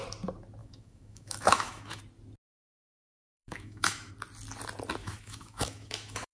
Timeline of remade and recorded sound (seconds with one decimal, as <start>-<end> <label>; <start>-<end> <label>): 0.0-0.6 recorded; 0.6-2.0 remade; 2.0-2.6 recorded; 2.6-4.1 remade; 4.1-5.0 recorded; 5.0-6.4 remade